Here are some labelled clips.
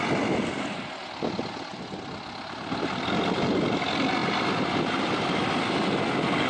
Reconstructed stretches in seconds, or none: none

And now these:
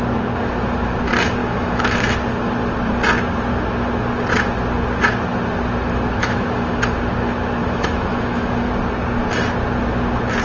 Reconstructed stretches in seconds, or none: 1.4-2.0 (autoencoder, DAC-VAE); 6.2-6.8; 7.6-8.7

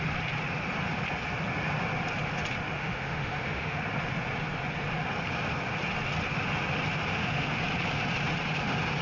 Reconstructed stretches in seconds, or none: 2.8-3.8 (autoencoder, DAC-VAE); 7.1-7.6

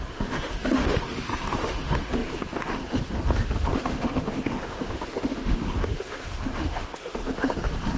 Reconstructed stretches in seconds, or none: 0.0-8.0 (autoencoder, DAC-VAE)